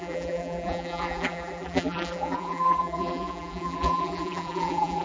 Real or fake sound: fake